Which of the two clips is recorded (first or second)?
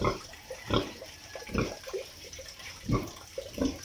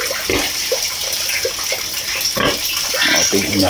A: second